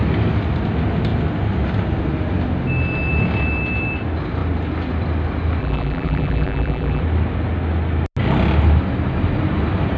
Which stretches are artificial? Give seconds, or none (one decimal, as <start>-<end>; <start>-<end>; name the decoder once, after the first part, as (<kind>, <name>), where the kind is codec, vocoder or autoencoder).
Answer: 5.6-7.0 (vocoder, BigVGAN v2)